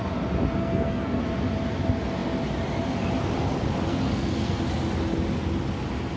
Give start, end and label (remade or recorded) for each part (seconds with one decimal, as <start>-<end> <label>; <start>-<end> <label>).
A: 0.0-0.6 recorded; 0.6-1.2 remade; 1.2-3.9 recorded; 3.9-4.6 remade; 4.6-6.2 recorded